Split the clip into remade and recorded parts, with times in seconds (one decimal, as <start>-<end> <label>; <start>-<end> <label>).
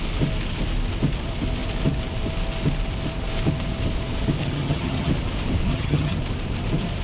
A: 0.0-4.4 recorded; 4.4-5.1 remade; 5.1-5.7 recorded; 5.7-6.2 remade; 6.2-7.0 recorded